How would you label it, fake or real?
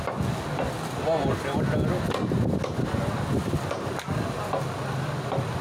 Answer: real